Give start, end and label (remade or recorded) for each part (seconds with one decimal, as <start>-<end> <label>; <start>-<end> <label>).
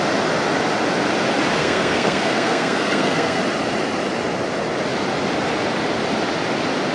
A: 0.0-1.6 recorded; 1.6-3.4 remade; 3.4-6.9 recorded